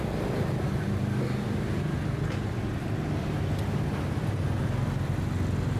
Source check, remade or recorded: recorded